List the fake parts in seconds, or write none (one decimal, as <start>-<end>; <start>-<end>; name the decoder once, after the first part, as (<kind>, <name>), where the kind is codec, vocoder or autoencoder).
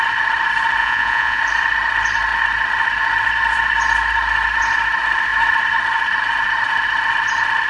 0.8-1.4 (vocoder, Vocos)